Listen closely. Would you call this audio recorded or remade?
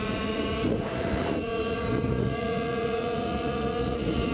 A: remade